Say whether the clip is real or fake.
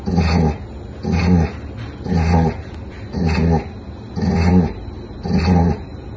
real